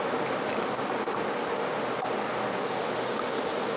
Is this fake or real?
real